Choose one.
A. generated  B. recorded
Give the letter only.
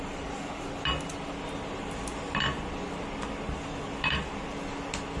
B